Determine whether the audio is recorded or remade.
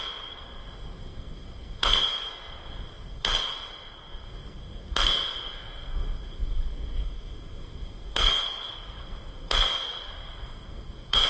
remade